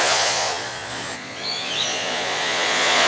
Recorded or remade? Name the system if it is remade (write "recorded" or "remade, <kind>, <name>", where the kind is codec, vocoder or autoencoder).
remade, vocoder, Vocos